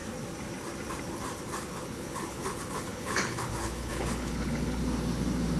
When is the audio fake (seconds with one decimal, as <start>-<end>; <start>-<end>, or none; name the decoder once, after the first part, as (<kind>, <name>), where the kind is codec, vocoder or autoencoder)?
1.6-4.8 (codec, HILCodec)